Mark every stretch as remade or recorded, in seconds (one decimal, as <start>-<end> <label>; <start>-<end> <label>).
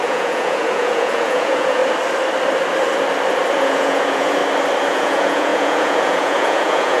0.0-1.8 remade; 1.8-3.5 recorded; 3.5-4.4 remade; 4.4-4.9 recorded; 4.9-7.0 remade